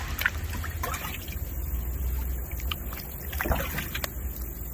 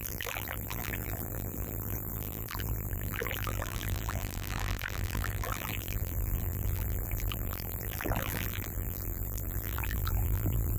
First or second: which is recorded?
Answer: first